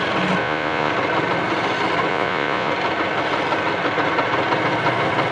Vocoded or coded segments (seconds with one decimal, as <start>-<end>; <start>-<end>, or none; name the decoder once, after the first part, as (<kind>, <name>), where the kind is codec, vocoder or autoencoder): 0.4-0.9 (vocoder, Vocos); 2.1-2.7